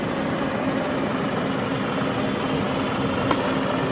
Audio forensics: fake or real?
real